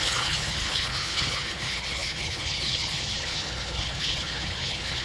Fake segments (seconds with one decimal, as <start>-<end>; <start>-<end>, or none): 0.0-5.0